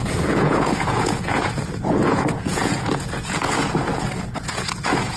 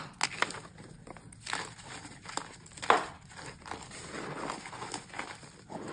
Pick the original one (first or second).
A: second